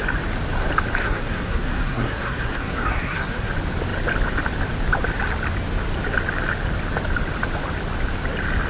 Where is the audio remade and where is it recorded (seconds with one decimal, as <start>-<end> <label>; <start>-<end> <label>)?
0.0-1.0 recorded; 1.0-3.5 remade; 3.5-8.7 recorded